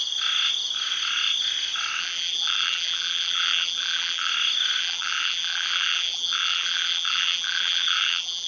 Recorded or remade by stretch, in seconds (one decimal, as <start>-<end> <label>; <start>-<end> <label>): 0.0-2.0 recorded; 2.0-4.3 remade; 4.3-4.8 recorded; 4.8-8.5 remade